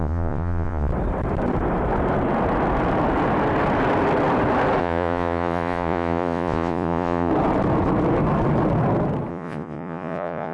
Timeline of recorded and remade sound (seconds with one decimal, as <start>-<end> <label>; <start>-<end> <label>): 0.0-0.9 remade; 0.9-4.8 recorded; 4.8-7.3 remade; 7.3-9.3 recorded; 9.3-10.5 remade